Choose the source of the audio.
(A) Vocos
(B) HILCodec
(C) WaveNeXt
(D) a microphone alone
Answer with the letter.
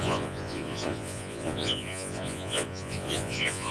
A